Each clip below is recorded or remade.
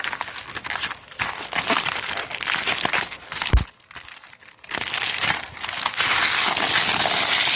recorded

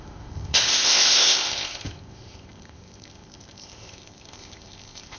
remade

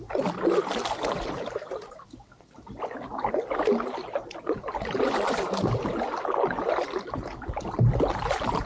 recorded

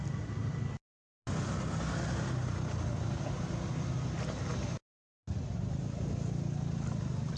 recorded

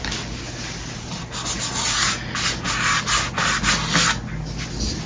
recorded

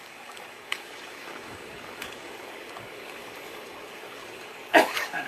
remade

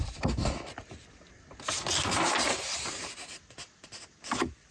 recorded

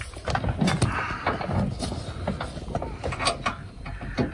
recorded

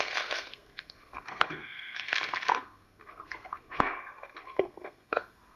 remade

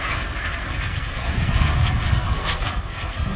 remade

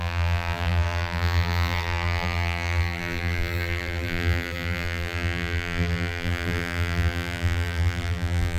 remade